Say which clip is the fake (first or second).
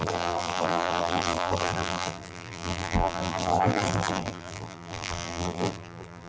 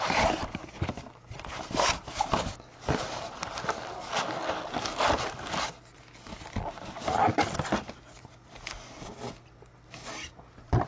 first